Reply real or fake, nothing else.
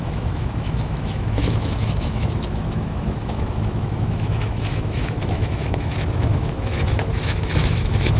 fake